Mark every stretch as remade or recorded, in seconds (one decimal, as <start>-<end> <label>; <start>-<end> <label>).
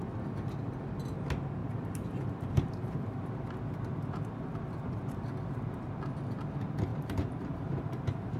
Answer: 0.0-1.6 recorded; 1.6-3.3 remade; 3.3-6.9 recorded; 6.9-8.4 remade